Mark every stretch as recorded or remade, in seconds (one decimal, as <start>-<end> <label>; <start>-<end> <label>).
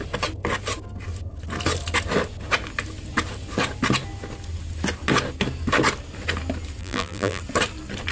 0.0-6.8 recorded; 6.8-7.4 remade; 7.4-8.1 recorded